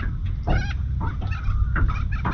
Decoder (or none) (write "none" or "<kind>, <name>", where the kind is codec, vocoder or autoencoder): none